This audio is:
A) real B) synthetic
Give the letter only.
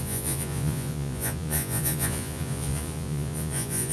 B